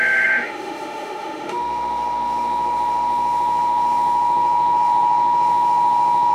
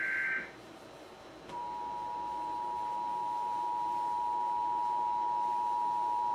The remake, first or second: first